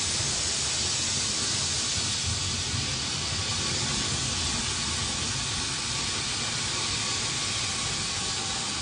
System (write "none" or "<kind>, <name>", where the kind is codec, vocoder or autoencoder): none